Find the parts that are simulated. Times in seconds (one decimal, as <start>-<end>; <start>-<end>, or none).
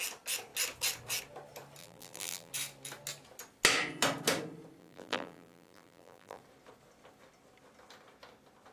1.8-2.5; 4.8-6.4